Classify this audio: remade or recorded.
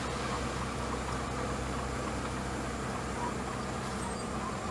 recorded